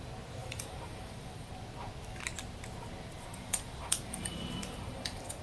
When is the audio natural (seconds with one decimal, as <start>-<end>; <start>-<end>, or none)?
0.0-0.4; 1.5-3.3